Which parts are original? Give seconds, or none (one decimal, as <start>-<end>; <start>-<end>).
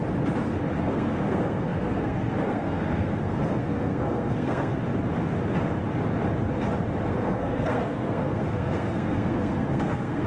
0.0-0.8; 4.8-7.1